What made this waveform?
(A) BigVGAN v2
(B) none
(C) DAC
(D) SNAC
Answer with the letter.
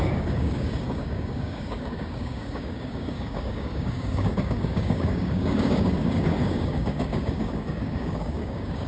C